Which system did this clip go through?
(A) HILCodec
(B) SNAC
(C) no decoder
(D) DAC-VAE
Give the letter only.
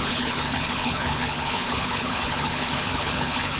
A